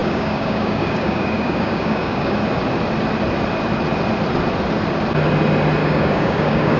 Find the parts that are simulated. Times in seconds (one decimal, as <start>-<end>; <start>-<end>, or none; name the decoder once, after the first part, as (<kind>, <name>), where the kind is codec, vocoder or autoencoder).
0.0-2.4 (codec, DAC); 5.8-6.8